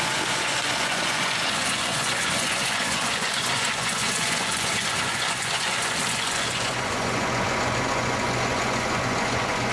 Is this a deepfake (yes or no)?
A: yes